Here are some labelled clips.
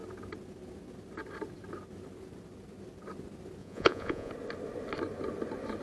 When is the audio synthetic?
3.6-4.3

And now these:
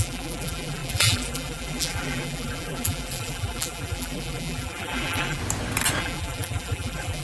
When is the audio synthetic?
0.0-5.4; 6.0-7.2

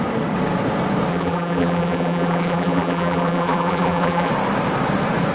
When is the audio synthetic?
1.1-4.3

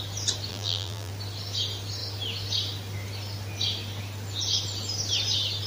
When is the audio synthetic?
0.5-1.1

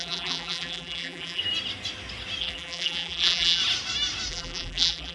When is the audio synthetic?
0.0-1.4; 2.4-3.6; 4.3-5.1

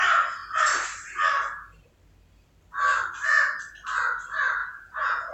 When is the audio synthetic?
4.6-5.3

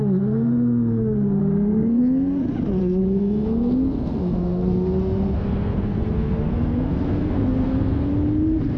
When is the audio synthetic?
1.4-2.0; 2.8-8.1